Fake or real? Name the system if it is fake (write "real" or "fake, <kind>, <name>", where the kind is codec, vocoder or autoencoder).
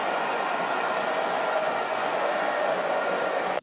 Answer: fake, vocoder, Vocos